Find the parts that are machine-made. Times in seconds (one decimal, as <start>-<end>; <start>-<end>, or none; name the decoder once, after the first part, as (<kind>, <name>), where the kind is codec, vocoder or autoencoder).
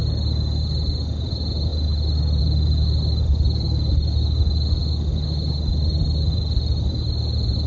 none